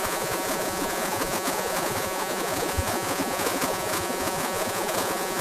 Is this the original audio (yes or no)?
no